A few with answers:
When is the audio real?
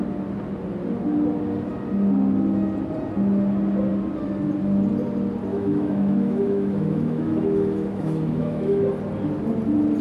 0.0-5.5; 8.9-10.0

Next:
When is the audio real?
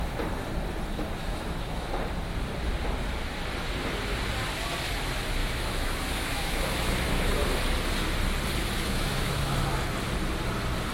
0.0-1.2; 1.9-5.4; 7.3-8.6; 9.6-10.9